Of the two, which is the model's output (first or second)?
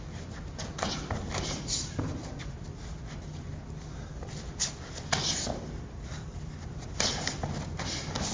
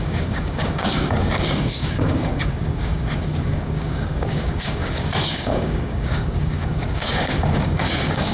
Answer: second